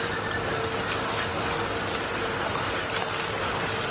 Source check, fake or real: real